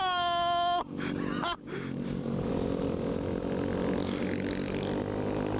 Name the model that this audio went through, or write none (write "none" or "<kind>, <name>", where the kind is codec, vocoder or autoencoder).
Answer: none